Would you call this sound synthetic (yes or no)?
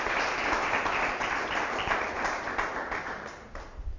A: yes